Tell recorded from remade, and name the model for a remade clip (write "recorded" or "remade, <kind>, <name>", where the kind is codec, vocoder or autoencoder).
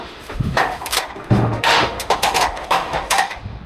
remade, autoencoder, DAC-VAE